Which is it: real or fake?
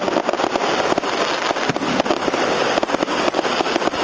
real